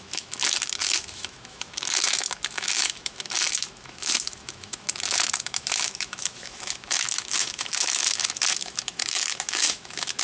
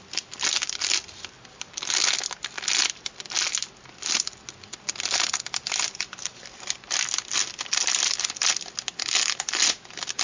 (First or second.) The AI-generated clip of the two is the first